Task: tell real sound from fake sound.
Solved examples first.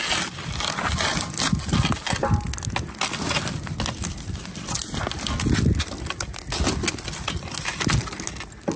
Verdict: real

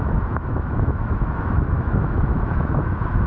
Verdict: fake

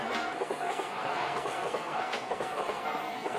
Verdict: fake